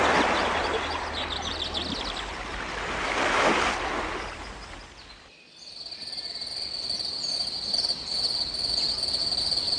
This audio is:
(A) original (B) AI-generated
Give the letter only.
A